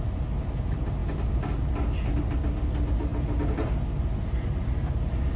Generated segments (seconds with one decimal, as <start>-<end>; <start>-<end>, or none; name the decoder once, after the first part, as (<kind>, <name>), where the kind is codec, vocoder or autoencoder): none